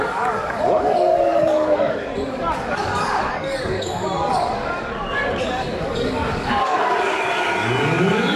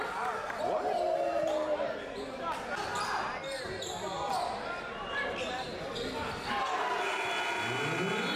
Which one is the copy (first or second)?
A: first